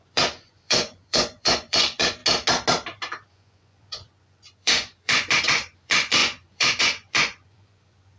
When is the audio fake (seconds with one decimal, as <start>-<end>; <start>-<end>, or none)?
0.0-2.2; 3.3-8.2